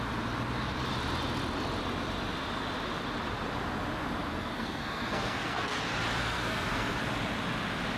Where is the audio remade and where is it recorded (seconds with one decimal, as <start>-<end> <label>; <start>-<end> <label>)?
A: 0.0-4.3 recorded; 4.3-5.8 remade; 5.8-6.2 recorded; 6.2-7.0 remade; 7.0-8.0 recorded